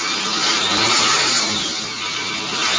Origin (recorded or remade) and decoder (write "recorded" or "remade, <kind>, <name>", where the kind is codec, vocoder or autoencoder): remade, vocoder, BigVGAN v2